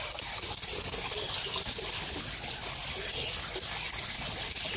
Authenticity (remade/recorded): recorded